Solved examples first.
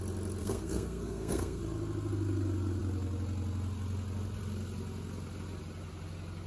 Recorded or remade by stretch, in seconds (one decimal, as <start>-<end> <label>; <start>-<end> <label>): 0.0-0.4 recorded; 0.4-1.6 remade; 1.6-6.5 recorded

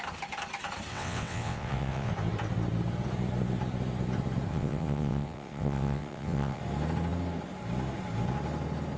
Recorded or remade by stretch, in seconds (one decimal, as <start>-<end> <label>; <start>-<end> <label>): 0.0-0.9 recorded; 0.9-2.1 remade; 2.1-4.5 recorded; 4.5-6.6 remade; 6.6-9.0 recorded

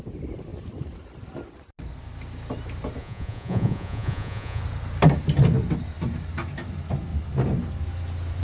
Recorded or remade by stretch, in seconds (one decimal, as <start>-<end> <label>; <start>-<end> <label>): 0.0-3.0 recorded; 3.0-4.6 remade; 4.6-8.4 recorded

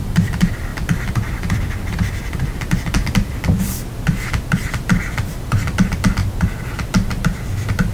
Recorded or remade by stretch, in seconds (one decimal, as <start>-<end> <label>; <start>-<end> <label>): 0.0-6.2 remade; 6.2-7.1 recorded; 7.1-7.9 remade

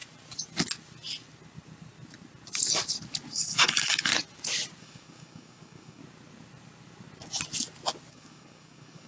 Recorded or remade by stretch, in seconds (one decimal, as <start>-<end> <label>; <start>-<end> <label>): 0.0-3.3 recorded; 3.3-4.1 remade; 4.1-4.8 recorded; 4.8-6.0 remade; 6.0-8.1 recorded; 8.1-9.1 remade

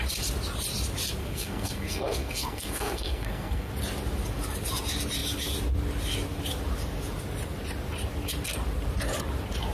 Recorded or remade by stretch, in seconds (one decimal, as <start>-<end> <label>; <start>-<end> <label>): 0.0-1.2 recorded; 1.2-3.7 remade; 3.7-9.7 recorded

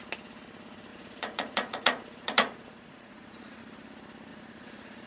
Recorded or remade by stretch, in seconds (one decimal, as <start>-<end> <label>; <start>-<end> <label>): 0.0-0.9 recorded; 0.9-3.6 remade; 3.6-4.3 recorded; 4.3-5.1 remade